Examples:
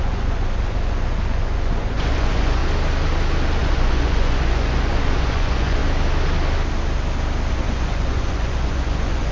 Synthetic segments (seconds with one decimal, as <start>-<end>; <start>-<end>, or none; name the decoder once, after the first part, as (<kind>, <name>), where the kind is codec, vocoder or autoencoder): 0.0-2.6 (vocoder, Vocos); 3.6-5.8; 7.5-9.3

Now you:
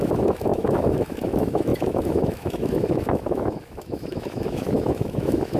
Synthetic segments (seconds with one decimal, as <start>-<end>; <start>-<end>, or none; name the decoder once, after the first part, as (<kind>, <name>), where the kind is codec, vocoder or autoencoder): 0.0-5.6 (autoencoder, DAC-VAE)

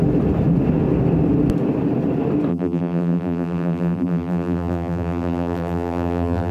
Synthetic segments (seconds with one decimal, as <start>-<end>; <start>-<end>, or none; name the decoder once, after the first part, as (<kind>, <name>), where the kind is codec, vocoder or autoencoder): 2.5-6.5 (vocoder, BigVGAN v2)

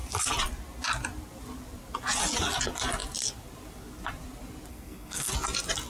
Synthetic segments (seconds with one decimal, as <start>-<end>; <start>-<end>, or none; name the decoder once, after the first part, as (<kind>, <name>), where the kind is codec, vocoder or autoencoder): 4.7-5.3 (codec, SNAC)

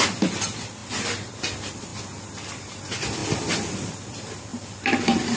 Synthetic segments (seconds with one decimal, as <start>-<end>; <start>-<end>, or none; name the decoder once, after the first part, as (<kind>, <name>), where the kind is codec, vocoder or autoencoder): none

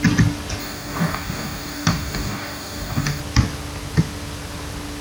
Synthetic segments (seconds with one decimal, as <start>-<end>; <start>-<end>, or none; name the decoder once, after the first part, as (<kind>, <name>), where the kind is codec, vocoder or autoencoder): 0.6-3.2 (codec, DAC)

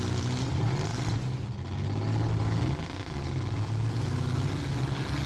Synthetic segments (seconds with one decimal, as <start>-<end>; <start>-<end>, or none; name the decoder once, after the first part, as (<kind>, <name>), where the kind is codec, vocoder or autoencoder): none

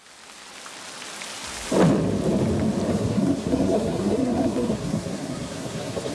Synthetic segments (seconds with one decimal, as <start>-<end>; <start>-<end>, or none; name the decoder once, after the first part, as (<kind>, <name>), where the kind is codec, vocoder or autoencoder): 2.9-6.1 (codec, SNAC)